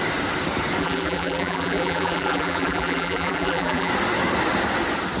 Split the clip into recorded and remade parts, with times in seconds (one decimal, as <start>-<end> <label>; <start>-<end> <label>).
0.0-0.8 recorded; 0.8-3.9 remade; 3.9-5.2 recorded